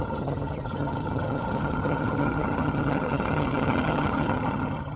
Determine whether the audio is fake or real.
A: fake